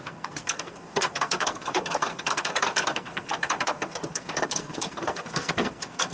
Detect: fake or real fake